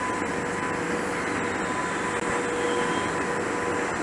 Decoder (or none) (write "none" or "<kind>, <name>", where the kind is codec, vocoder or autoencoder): none